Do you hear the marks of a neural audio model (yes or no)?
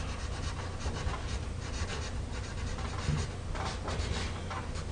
no